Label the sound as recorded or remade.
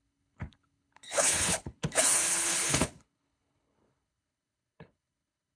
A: remade